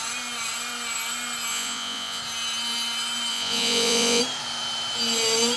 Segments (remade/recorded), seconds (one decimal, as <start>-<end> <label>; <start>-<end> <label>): 0.0-1.5 recorded; 1.5-2.2 remade; 2.2-3.3 recorded; 3.3-4.2 remade; 4.2-5.6 recorded